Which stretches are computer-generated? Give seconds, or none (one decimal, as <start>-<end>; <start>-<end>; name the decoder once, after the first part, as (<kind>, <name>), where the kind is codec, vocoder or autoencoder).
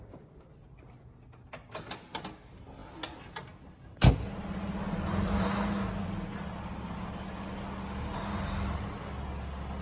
none